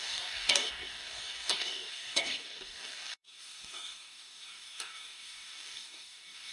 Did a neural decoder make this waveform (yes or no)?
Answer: yes